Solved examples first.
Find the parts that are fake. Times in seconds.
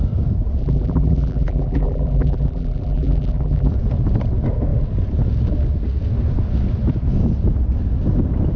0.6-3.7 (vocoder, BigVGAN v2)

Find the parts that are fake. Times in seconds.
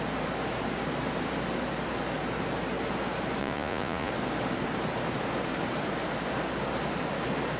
3.4-4.1 (vocoder, Vocos)